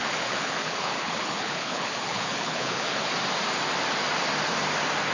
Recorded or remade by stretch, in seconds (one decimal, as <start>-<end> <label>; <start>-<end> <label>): 0.0-3.1 remade; 3.1-5.1 recorded